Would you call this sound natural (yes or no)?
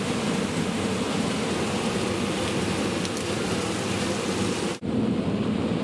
yes